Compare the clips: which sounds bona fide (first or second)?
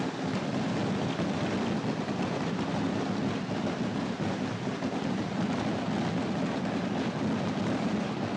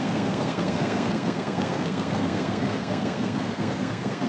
first